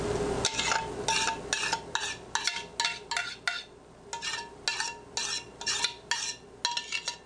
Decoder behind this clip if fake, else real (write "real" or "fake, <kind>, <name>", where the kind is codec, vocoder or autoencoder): real